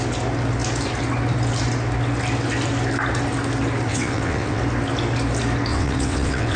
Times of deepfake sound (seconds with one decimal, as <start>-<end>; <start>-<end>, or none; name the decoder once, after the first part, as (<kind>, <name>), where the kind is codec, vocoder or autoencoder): 3.9-4.6 (vocoder, WaveNeXt); 5.7-6.6